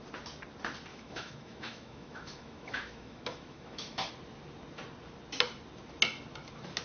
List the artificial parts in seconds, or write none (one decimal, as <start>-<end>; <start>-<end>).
0.9-4.1